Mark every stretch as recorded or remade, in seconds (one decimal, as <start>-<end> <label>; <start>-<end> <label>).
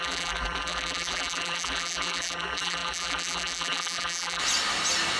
0.0-4.4 remade; 4.4-5.2 recorded